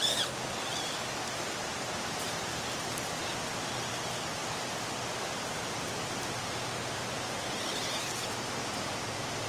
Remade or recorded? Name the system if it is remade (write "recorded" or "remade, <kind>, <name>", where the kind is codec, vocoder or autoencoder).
recorded